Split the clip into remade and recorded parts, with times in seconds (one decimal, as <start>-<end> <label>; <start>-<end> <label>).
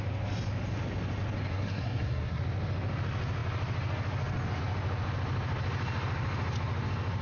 0.0-1.5 recorded; 1.5-2.4 remade; 2.4-7.2 recorded